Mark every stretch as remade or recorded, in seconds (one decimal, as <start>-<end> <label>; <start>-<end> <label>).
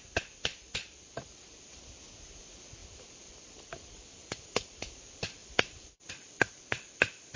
0.0-7.4 recorded